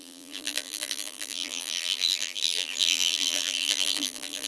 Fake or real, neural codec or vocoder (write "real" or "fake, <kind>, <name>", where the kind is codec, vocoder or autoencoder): fake, vocoder, BigVGAN v2